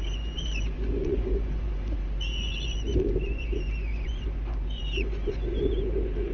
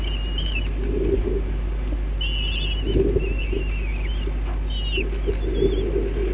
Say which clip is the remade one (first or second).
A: first